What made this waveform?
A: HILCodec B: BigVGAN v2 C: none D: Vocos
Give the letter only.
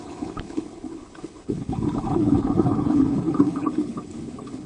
A